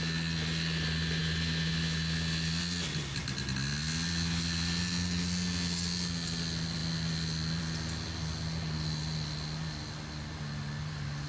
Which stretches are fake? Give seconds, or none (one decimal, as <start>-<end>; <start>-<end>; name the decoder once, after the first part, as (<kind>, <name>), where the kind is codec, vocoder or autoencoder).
none